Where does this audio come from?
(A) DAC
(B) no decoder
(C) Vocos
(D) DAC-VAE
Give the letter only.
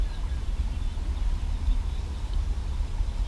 B